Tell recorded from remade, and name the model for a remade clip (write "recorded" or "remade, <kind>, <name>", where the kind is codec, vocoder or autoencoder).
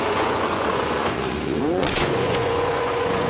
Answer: remade, vocoder, Vocos